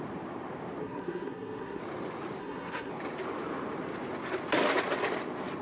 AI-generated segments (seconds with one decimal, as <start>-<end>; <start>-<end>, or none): 0.8-1.8; 2.4-2.9